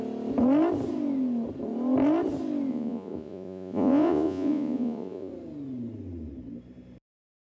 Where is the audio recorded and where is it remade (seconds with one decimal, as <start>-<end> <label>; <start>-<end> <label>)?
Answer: 0.0-2.7 recorded; 2.7-5.3 remade; 5.3-7.5 recorded